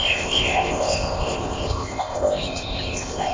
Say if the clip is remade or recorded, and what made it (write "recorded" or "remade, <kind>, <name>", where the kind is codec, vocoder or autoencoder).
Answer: remade, codec, ZipCodec